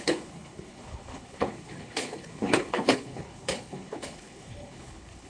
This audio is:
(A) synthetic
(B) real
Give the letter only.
A